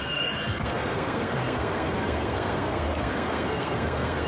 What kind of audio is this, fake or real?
fake